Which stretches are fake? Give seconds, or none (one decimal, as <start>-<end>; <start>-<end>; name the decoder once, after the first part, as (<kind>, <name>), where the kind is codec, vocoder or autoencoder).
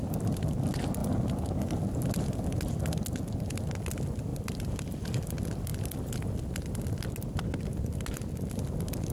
none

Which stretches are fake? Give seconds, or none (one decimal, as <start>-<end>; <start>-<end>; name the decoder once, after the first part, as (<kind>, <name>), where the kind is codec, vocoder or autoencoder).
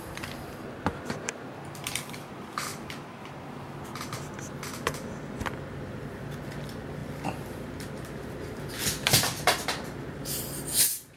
0.0-11.2 (vocoder, BigVGAN v2)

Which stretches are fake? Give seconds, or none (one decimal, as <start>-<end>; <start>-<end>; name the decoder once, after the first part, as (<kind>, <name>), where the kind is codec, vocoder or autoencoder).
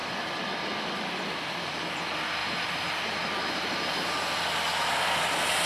0.0-1.9 (vocoder, BigVGAN v2)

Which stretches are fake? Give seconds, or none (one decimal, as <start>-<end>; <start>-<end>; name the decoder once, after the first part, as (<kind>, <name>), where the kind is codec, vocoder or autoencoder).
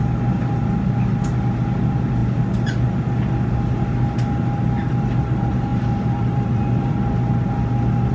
5.7-6.9 (vocoder, BigVGAN v2)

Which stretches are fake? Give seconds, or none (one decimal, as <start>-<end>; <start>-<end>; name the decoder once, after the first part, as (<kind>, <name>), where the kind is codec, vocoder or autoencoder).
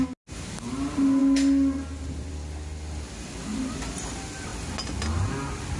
none